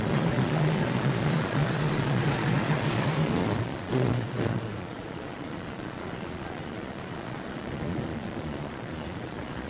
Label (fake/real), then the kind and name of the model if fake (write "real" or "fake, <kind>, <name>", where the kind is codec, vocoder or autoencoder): fake, vocoder, Vocos